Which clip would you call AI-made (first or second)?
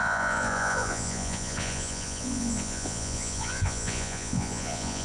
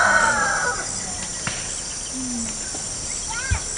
first